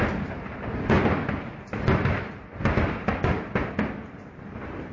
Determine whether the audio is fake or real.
real